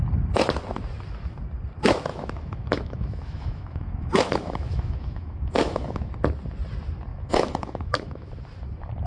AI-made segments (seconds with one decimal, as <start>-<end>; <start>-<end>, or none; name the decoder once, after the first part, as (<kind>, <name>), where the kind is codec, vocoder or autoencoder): 2.1-6.1 (autoencoder, DAC-VAE); 7.1-8.3